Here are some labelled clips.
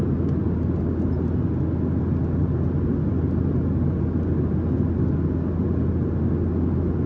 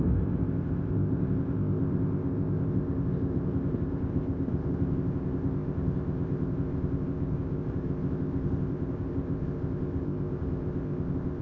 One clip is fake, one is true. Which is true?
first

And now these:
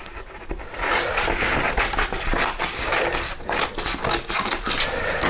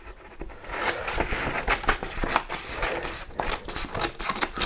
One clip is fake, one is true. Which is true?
first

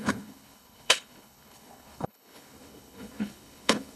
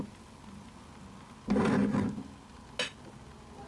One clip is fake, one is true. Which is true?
second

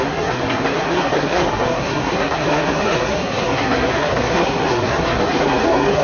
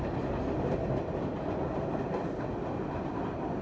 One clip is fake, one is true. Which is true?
second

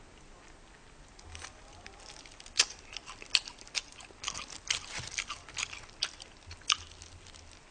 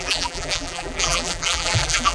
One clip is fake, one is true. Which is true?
first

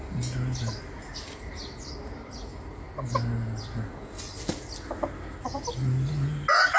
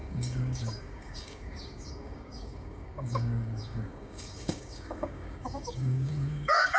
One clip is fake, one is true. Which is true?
first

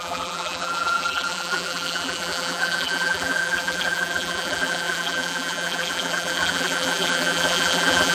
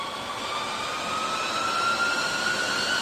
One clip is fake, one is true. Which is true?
second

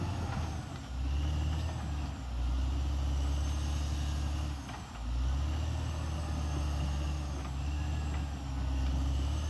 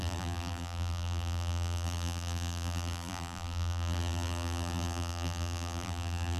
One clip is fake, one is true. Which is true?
first